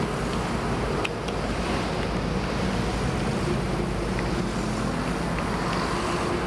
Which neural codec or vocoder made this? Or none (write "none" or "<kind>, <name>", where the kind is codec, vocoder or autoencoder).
none